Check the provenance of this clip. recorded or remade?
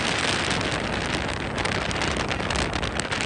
recorded